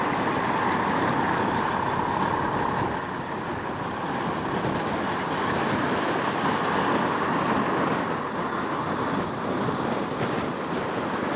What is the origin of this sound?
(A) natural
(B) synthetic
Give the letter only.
A